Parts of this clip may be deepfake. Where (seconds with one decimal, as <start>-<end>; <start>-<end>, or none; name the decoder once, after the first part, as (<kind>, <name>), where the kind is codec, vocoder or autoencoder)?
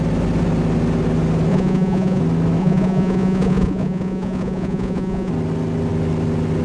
1.5-2.2 (vocoder, Vocos); 2.6-5.3